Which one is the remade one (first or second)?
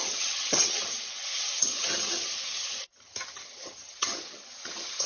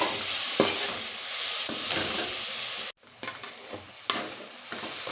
first